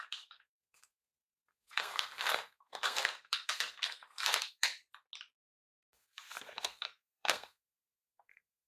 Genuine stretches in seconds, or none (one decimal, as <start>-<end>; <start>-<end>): 4.7-5.6